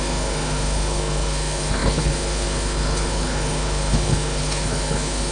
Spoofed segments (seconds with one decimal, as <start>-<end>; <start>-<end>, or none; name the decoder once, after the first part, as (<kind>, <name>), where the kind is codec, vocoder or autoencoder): 0.0-5.3 (codec, HILCodec)